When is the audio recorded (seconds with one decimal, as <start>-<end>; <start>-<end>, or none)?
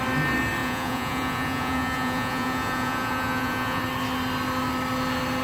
0.0-0.6; 3.8-5.4